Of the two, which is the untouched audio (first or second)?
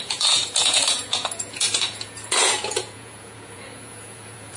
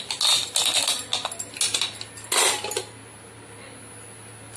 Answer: second